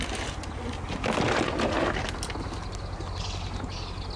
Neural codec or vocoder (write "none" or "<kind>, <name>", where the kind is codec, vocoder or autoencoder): none